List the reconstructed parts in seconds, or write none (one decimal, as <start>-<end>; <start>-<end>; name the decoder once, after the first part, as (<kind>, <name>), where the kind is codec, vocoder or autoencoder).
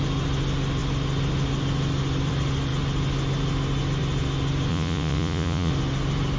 4.7-5.7 (vocoder, Vocos)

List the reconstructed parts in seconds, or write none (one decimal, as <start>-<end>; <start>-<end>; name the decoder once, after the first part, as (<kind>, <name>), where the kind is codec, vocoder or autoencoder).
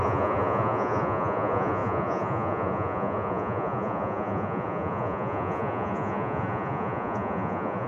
0.0-7.9 (vocoder, Vocos)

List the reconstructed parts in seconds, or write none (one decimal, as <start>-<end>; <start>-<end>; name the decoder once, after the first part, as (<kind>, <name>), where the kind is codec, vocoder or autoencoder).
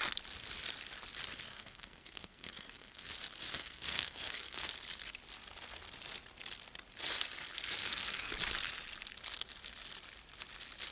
1.5-3.1 (codec, SNAC); 3.5-4.7; 7.8-8.3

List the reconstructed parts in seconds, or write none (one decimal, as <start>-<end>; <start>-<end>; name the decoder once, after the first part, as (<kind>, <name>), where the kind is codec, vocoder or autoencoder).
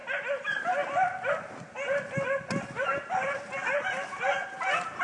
none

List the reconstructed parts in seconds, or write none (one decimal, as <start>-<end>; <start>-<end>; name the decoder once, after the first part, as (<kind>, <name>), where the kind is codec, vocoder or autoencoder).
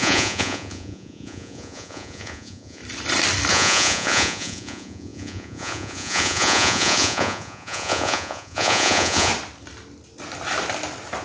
0.0-2.8 (vocoder, Vocos); 3.5-9.3